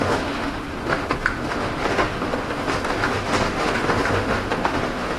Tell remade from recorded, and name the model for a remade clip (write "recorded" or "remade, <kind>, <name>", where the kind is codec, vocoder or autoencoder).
remade, autoencoder, DAC-VAE